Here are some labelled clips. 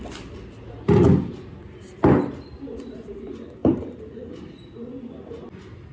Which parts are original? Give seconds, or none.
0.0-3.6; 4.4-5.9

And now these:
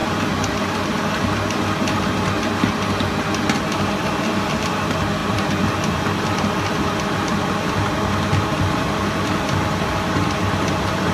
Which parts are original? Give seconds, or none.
0.0-3.6

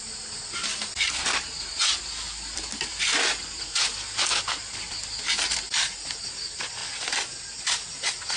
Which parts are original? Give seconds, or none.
0.0-8.4

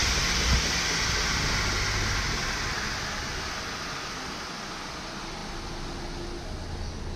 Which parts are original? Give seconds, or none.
0.0-7.2

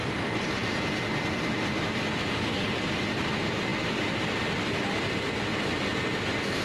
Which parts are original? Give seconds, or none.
0.0-6.6

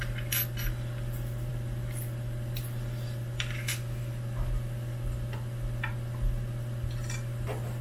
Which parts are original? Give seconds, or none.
0.0-7.8

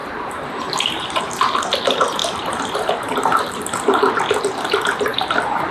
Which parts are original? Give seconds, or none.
1.2-2.2; 3.6-5.1

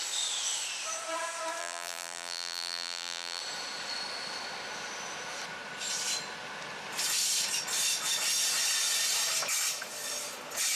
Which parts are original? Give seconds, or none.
0.0-1.6; 3.4-10.8